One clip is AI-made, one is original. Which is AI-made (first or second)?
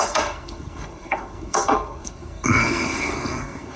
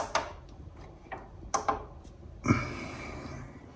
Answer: first